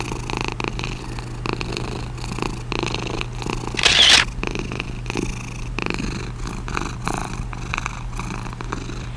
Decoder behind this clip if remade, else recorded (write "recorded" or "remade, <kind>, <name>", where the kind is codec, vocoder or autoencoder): recorded